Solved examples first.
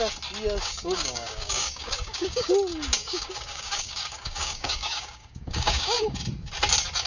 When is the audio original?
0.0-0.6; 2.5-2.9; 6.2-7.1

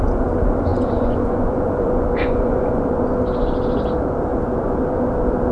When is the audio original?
0.0-0.7; 3.2-4.3; 5.1-5.5

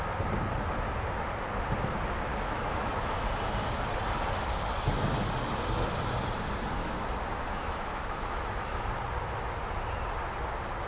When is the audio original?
0.0-2.3; 3.3-6.8; 8.8-10.9

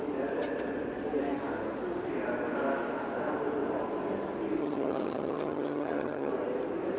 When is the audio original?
0.0-4.6; 6.3-7.0

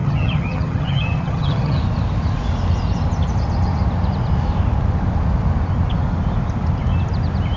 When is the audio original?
1.8-7.6

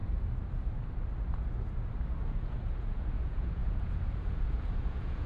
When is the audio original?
0.0-2.3

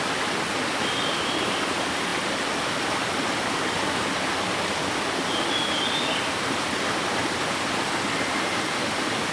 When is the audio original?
0.0-9.3

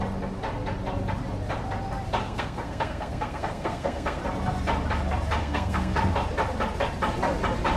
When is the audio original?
0.0-2.2; 4.2-5.4; 6.0-7.8